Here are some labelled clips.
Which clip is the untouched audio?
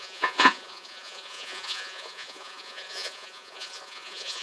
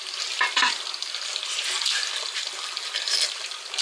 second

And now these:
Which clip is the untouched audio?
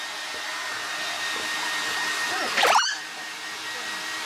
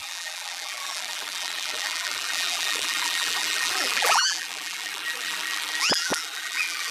first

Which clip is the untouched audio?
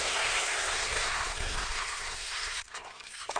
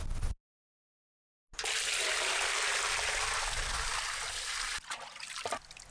second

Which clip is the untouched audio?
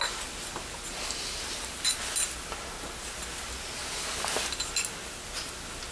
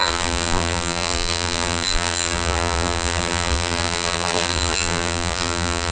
first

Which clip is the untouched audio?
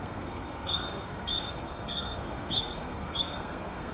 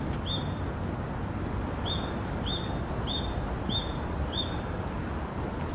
second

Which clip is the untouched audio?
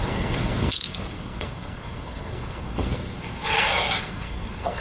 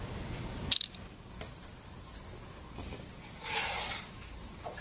second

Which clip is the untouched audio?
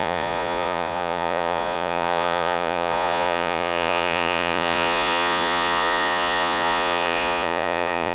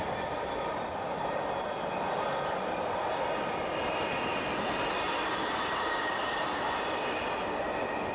second